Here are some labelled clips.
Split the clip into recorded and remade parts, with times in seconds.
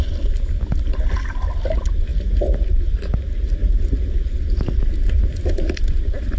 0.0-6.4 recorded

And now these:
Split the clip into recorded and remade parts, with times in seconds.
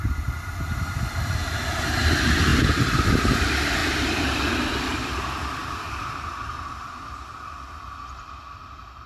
0.0-2.5 recorded; 2.5-3.3 remade; 3.3-3.8 recorded; 3.8-4.5 remade; 4.5-5.6 recorded; 5.6-6.3 remade; 6.3-9.1 recorded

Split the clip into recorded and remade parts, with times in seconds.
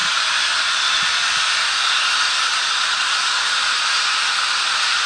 0.0-2.5 recorded; 2.5-3.4 remade; 3.4-5.1 recorded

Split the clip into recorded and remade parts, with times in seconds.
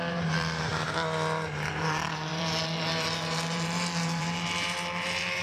0.0-0.7 remade; 0.7-1.7 recorded; 1.7-5.4 remade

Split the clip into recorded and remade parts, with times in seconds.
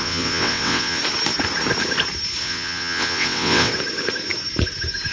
0.0-1.0 remade; 1.0-2.4 recorded; 2.4-3.7 remade; 3.7-5.1 recorded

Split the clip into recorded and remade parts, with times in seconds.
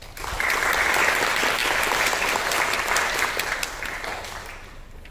0.0-5.1 recorded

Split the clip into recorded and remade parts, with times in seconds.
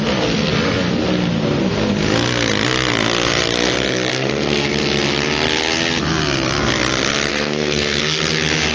0.0-4.1 recorded; 4.1-4.7 remade; 4.7-7.3 recorded; 7.3-8.0 remade; 8.0-8.7 recorded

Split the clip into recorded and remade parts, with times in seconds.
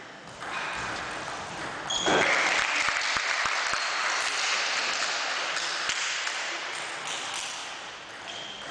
0.0-8.7 recorded